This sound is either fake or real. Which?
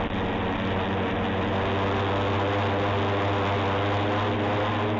real